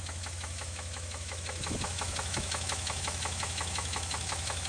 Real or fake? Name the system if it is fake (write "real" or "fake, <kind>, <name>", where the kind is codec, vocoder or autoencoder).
fake, autoencoder, DAC-VAE